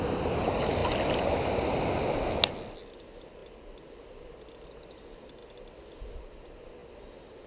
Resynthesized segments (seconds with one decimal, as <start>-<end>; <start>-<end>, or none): none